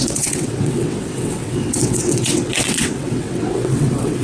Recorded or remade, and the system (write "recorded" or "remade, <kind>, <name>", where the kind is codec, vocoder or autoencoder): remade, vocoder, WaveNeXt